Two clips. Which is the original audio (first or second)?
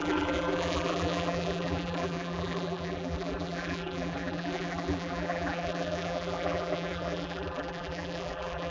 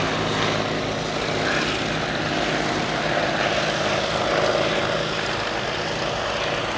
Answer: second